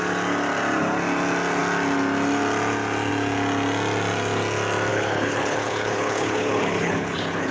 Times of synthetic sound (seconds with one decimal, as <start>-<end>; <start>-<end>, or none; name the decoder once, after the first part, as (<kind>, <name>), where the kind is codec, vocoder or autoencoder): 4.9-7.5 (codec, HILCodec)